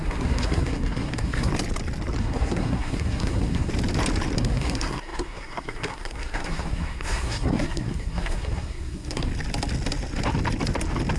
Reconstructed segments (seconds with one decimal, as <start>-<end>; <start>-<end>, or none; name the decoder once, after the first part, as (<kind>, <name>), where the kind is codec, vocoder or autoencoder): 0.0-1.5 (codec, SNAC); 2.2-3.7; 4.4-9.3